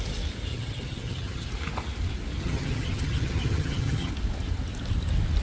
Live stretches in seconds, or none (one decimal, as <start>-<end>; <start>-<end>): 0.0-0.5; 1.5-2.4; 4.1-5.4